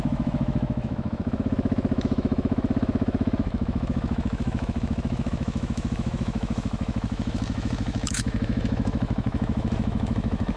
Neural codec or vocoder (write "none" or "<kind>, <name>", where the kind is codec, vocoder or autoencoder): autoencoder, DAC-VAE